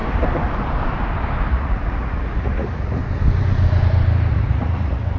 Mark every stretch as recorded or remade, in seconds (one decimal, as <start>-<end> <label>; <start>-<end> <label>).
0.0-1.5 recorded; 1.5-3.0 remade; 3.0-4.3 recorded; 4.3-5.2 remade